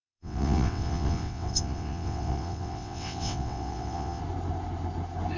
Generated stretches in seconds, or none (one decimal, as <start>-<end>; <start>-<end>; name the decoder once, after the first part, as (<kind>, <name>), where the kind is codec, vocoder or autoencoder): 0.0-4.2 (vocoder, WaveNeXt)